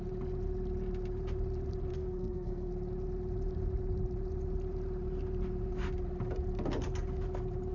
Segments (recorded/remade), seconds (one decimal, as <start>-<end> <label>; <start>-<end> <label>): 0.0-1.9 recorded; 1.9-2.7 remade; 2.7-7.7 recorded